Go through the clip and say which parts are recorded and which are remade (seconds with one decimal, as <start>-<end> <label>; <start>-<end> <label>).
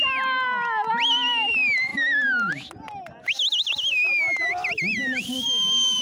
0.0-6.0 recorded